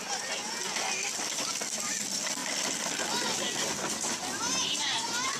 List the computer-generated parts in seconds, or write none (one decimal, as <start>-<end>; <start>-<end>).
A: none